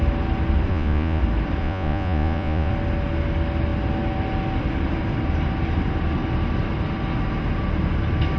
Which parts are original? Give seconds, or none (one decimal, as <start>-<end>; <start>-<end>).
0.0-0.7; 1.2-1.6; 2.7-8.4